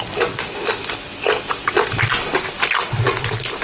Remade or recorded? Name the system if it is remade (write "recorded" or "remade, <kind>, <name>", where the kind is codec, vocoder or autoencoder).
recorded